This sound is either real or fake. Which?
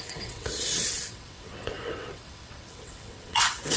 fake